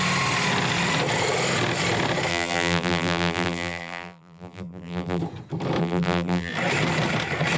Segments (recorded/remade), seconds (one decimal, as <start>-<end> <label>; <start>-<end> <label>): 0.0-2.3 recorded; 2.3-5.2 remade; 5.2-5.8 recorded; 5.8-6.5 remade; 6.5-7.6 recorded